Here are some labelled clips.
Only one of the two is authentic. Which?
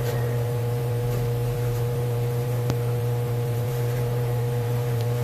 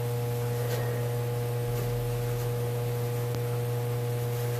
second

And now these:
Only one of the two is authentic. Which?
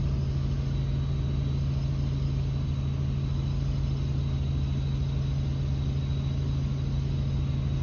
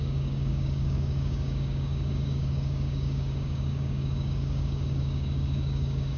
first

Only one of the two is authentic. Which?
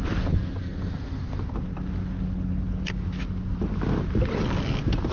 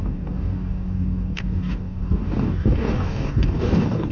first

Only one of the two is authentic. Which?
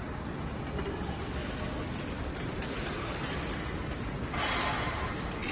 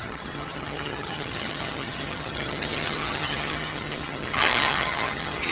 first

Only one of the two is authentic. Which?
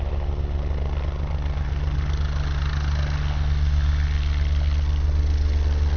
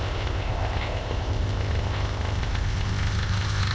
first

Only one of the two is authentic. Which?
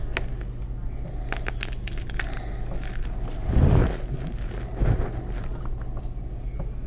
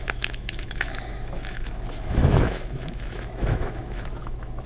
first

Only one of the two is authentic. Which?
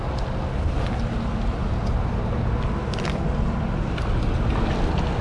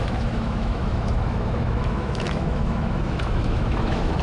first